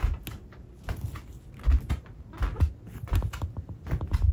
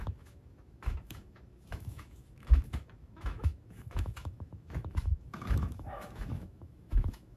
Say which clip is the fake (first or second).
second